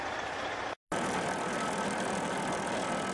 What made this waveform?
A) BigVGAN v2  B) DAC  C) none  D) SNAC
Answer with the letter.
C